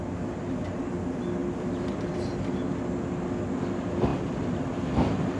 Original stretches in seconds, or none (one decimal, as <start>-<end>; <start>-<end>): 0.0-1.4; 2.2-4.1